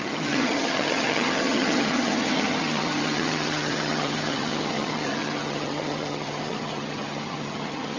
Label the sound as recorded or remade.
remade